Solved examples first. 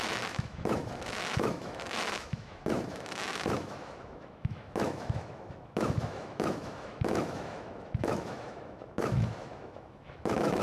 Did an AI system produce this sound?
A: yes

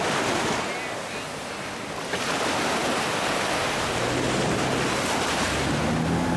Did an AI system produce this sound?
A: no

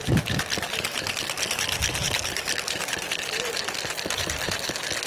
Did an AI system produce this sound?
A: no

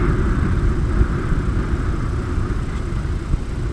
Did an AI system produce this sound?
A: no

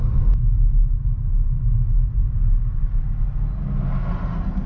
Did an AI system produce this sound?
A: no